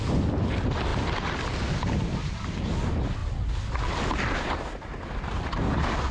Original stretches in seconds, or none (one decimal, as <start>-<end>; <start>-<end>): 0.0-6.1